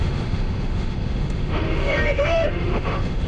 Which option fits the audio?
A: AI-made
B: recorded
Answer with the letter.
A